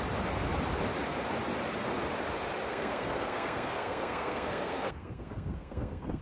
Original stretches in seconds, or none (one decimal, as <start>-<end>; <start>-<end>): 0.0-2.7